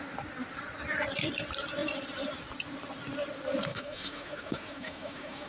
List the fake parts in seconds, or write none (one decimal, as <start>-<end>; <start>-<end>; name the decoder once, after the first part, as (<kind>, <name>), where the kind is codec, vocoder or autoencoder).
3.7-5.5 (autoencoder, DAC-VAE)